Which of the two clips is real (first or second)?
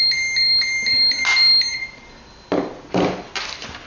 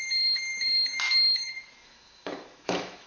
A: first